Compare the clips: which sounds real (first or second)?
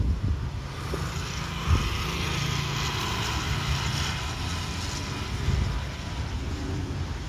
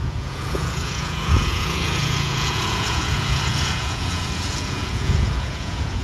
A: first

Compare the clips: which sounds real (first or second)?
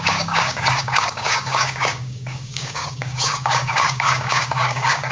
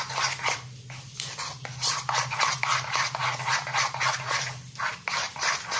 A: second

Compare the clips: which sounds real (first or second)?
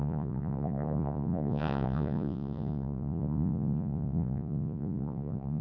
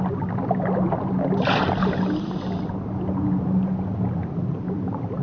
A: second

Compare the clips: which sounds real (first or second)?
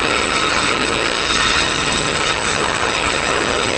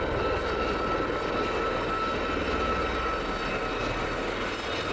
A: second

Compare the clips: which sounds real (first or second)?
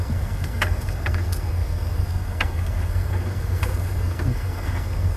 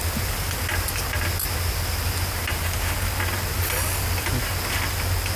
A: second